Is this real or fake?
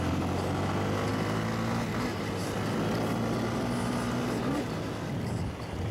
real